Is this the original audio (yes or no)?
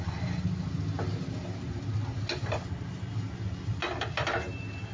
yes